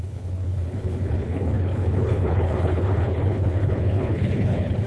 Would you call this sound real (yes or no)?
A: no